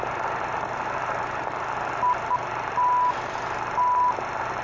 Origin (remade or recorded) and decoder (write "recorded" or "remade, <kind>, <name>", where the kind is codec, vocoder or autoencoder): recorded